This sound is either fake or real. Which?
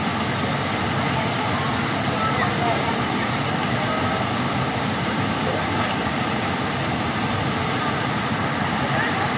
real